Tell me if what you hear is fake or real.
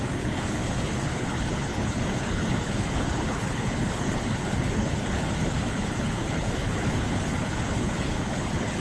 fake